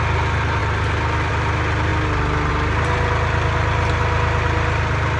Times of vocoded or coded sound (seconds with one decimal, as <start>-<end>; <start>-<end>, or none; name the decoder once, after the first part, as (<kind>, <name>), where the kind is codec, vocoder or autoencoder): none